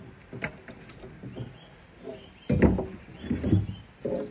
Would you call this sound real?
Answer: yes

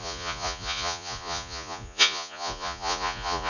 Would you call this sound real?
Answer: no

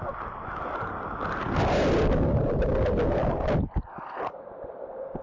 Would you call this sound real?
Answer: yes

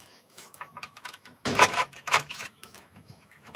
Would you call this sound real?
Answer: no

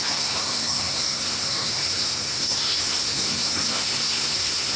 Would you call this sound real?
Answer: no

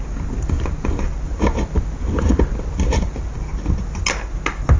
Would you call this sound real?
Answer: yes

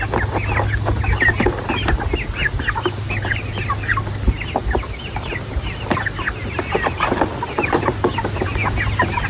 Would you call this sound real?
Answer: yes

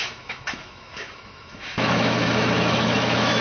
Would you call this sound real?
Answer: no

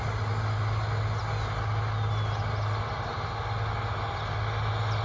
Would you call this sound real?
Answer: yes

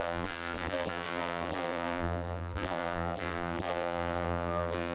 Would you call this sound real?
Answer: no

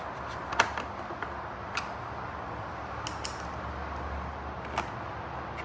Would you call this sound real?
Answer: yes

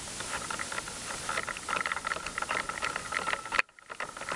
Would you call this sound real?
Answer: yes